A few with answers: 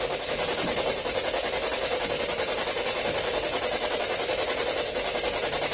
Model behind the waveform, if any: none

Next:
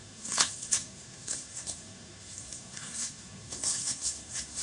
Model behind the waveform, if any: codec, SNAC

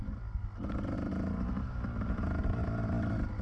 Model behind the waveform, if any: none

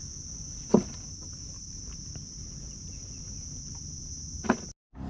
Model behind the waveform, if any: none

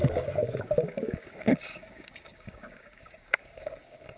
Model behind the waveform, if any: codec, DAC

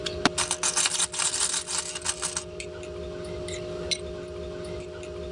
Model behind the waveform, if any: none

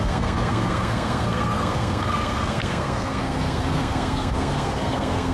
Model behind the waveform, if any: codec, SNAC